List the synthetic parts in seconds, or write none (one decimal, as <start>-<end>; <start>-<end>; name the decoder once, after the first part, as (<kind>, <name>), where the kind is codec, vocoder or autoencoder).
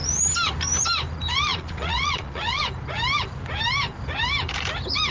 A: 1.5-2.6 (vocoder, Vocos)